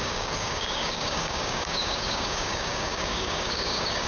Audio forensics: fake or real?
fake